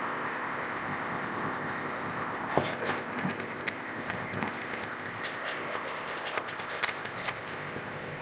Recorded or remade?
remade